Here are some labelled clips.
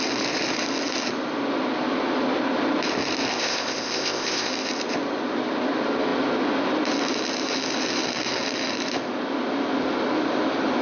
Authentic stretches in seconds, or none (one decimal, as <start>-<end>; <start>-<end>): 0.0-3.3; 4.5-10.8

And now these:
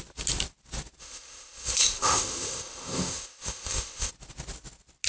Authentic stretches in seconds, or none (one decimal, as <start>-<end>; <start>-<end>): 0.0-1.0; 4.1-5.1

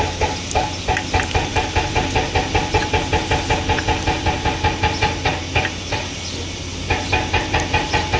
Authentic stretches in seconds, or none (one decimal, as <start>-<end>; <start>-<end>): 0.0-8.2